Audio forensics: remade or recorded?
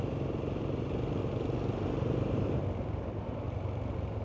recorded